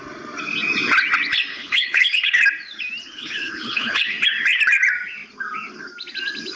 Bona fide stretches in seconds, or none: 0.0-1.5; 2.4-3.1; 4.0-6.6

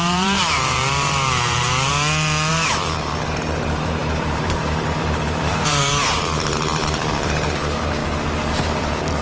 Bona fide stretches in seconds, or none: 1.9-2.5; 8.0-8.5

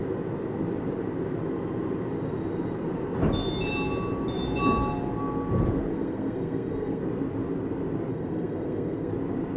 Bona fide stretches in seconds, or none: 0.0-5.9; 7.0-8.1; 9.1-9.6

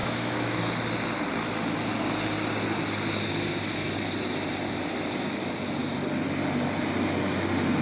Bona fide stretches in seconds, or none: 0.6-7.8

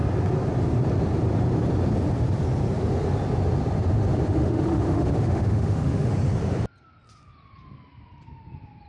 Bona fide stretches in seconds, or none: 0.0-4.4; 6.1-8.9

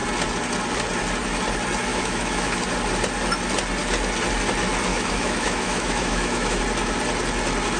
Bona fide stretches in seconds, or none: 0.0-1.9; 2.6-4.9; 6.6-7.8